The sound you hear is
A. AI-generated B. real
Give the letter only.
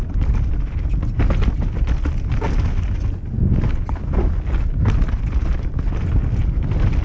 B